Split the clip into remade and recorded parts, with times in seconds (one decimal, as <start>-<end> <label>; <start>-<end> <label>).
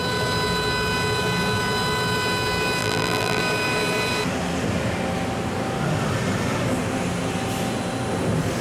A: 0.0-2.8 recorded; 2.8-3.4 remade; 3.4-8.6 recorded